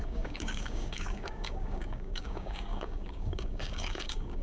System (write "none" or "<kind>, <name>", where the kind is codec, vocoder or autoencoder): codec, DAC